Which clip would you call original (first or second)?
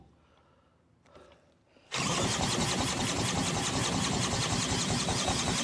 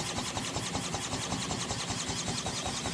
second